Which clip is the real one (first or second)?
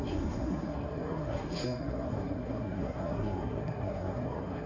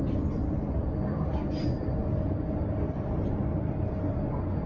second